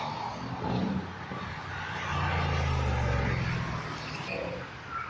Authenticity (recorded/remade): recorded